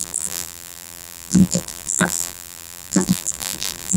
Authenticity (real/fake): fake